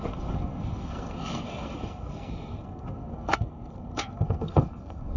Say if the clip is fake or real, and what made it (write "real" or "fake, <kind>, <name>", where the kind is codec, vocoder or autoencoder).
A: fake, codec, SNAC